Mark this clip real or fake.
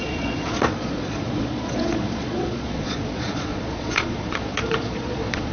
fake